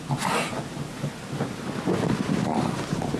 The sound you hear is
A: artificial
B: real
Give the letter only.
B